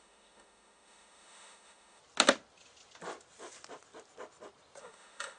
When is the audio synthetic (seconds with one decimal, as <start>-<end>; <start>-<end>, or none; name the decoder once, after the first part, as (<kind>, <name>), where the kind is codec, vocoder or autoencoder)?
0.0-2.0 (autoencoder, DAC-VAE); 4.8-5.4